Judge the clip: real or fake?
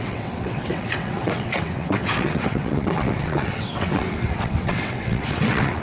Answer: fake